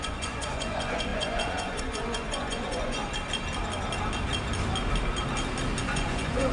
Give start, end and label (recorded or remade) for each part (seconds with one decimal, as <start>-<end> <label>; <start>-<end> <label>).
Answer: 0.0-3.0 remade; 3.0-5.8 recorded; 5.8-6.5 remade